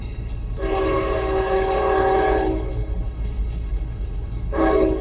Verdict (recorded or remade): remade